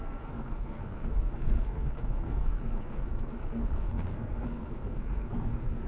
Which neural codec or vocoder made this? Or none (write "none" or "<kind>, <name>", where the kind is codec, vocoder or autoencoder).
codec, SNAC